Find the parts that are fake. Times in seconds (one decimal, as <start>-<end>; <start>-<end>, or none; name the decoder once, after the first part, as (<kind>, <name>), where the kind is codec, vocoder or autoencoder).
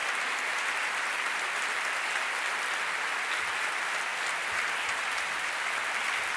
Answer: none